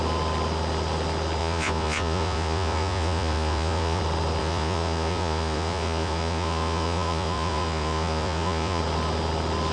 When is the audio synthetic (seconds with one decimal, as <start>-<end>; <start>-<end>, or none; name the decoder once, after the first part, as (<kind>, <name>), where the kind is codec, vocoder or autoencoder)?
1.4-4.0 (vocoder, Vocos); 4.4-8.8